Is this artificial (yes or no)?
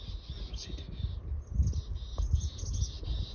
no